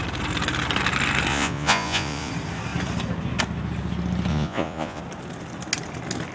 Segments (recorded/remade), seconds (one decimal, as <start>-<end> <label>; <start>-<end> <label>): 0.0-1.3 recorded; 1.3-2.3 remade; 2.3-4.3 recorded; 4.3-5.0 remade; 5.0-6.3 recorded